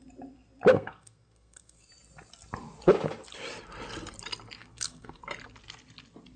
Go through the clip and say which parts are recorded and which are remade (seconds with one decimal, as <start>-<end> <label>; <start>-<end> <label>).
0.0-0.7 recorded; 0.7-1.9 remade; 1.9-4.6 recorded; 4.6-5.2 remade; 5.2-6.4 recorded